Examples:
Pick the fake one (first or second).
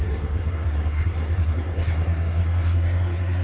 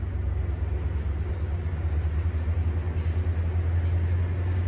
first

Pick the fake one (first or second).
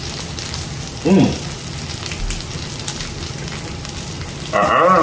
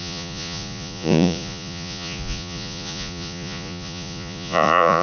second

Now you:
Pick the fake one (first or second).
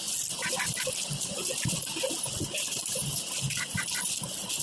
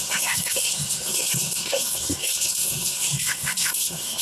second